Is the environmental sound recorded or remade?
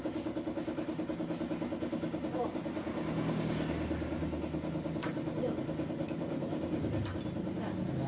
recorded